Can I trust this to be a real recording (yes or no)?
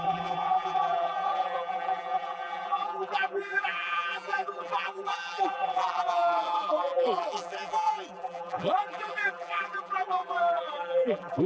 no